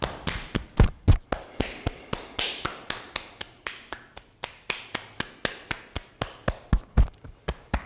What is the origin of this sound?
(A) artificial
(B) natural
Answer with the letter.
B